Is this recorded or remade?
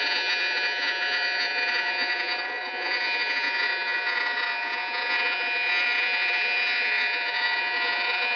remade